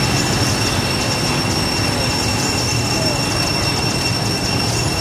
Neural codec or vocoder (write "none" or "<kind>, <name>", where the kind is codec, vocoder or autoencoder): none